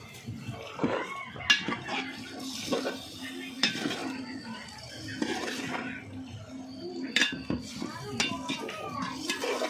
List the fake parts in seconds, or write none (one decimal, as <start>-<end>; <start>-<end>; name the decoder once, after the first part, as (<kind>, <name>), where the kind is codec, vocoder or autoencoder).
none